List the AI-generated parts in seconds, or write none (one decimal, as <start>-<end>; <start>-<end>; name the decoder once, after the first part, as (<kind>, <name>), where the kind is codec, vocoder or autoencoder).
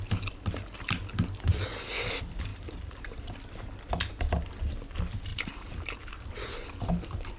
2.5-3.2 (vocoder, BigVGAN v2); 5.3-5.9